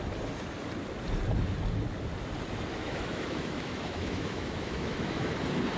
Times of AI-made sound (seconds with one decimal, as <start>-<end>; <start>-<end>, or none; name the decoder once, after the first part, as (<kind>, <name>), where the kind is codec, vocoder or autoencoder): 2.7-5.3 (autoencoder, DAC-VAE)